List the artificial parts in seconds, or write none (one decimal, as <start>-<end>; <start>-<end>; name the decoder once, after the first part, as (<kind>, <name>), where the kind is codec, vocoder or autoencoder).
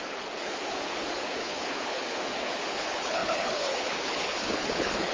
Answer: 0.0-5.1 (codec, HILCodec)